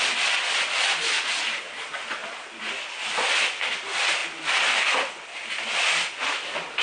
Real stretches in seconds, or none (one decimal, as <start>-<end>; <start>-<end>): 0.0-6.8